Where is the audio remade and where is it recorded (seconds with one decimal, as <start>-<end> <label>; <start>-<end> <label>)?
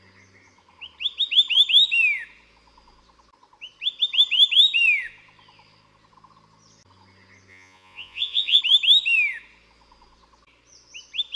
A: 0.0-7.5 recorded; 7.5-8.6 remade; 8.6-11.4 recorded